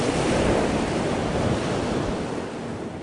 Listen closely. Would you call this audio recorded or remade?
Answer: recorded